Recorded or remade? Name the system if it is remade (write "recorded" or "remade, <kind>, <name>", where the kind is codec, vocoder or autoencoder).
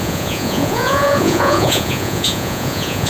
remade, vocoder, Vocos